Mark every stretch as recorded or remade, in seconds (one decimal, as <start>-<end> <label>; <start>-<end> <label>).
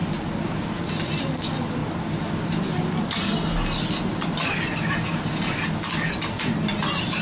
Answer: 0.0-7.2 recorded